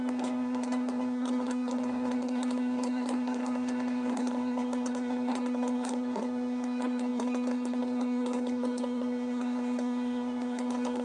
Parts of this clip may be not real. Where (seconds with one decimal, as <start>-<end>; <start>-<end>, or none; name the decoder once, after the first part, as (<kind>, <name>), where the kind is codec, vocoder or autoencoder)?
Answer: 0.0-11.0 (codec, SNAC)